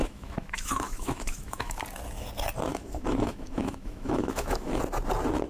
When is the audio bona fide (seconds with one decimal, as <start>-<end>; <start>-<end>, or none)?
1.8-2.7; 4.8-5.5